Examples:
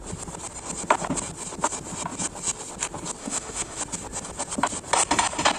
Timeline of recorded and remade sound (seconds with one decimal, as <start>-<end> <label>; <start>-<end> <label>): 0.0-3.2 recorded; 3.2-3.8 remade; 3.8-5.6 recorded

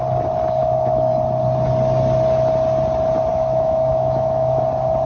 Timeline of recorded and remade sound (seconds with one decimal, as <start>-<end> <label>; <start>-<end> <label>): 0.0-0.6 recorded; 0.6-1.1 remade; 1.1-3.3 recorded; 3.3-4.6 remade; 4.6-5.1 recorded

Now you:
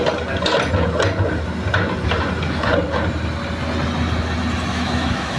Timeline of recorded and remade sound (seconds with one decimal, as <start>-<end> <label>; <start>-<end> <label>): 0.0-4.7 recorded; 4.7-5.4 remade

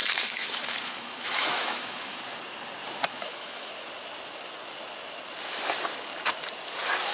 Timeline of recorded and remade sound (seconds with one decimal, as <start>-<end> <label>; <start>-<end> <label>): 0.0-2.2 remade; 2.2-3.1 recorded; 3.1-3.7 remade; 3.7-7.1 recorded

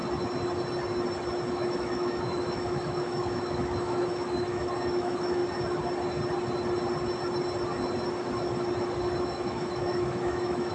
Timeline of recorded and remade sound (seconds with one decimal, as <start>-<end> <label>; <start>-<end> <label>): 0.0-1.5 recorded; 1.5-5.4 remade; 5.4-9.2 recorded; 9.2-10.7 remade

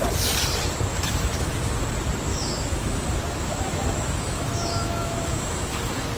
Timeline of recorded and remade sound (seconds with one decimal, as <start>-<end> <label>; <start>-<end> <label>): 0.0-0.9 recorded; 0.9-1.5 remade; 1.5-2.3 recorded; 2.3-6.2 remade

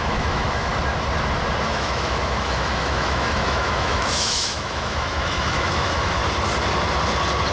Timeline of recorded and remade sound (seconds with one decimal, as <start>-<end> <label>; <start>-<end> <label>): 0.0-0.7 remade; 0.7-1.7 recorded; 1.7-6.2 remade; 6.2-7.5 recorded